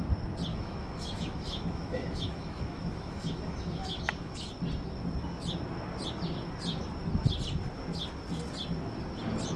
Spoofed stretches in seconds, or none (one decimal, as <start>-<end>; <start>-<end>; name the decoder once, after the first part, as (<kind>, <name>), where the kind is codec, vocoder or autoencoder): 0.5-4.5 (autoencoder, DAC-VAE)